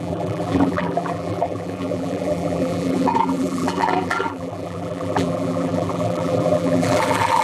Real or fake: fake